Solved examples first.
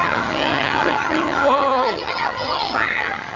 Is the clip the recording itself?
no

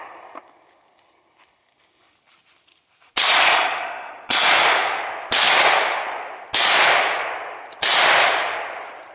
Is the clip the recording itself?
yes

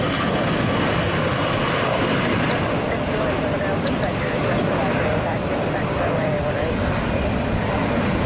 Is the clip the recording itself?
yes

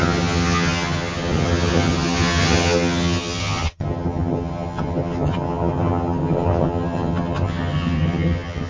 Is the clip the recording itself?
no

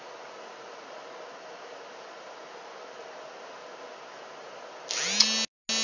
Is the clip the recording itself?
yes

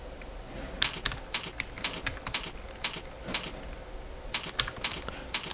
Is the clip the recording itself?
yes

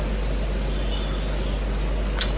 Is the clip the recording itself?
yes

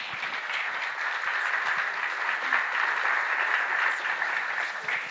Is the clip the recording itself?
yes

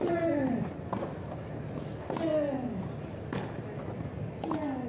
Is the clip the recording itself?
yes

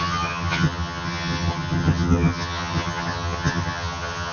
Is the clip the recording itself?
no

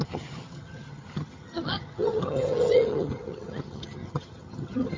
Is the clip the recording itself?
no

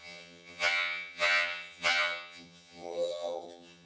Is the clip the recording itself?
no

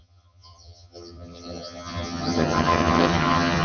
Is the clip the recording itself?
no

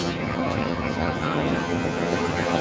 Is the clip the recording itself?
no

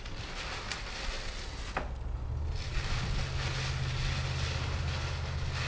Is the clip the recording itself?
yes